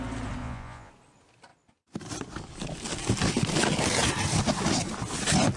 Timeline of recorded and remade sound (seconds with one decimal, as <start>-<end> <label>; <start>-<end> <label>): 0.0-0.4 recorded; 0.4-0.9 remade; 0.9-5.6 recorded

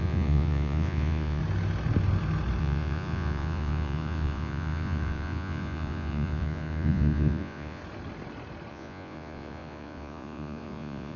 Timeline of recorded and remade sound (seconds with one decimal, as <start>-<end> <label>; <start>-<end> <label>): 0.0-1.4 remade; 1.4-2.6 recorded; 2.6-7.8 remade; 7.8-8.7 recorded; 8.7-11.2 remade

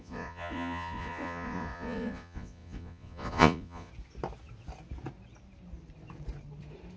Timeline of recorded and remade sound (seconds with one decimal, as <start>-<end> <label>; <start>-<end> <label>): 0.0-3.9 remade; 3.9-7.0 recorded

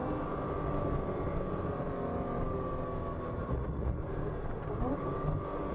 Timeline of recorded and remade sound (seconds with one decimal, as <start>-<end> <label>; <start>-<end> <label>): 0.0-3.4 recorded; 3.4-4.0 remade; 4.0-5.7 recorded

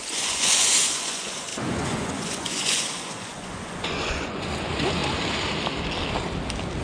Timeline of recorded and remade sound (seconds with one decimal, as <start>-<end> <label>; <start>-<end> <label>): 0.0-5.0 remade; 5.0-6.8 recorded

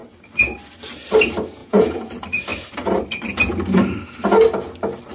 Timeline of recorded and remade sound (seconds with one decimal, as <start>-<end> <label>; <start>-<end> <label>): 0.0-1.6 recorded; 1.6-2.1 remade; 2.1-5.1 recorded